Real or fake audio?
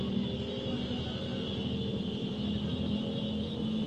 real